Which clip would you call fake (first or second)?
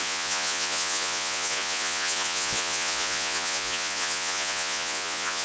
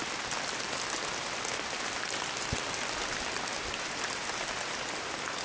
first